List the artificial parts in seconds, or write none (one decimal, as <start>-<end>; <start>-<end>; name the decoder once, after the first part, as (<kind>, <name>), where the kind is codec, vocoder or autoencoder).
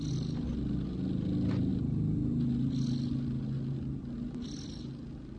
none